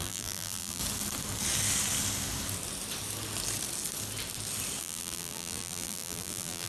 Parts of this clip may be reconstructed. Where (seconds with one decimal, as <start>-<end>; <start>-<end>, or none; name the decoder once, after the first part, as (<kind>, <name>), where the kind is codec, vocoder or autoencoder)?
0.0-0.8 (vocoder, BigVGAN v2); 4.8-6.7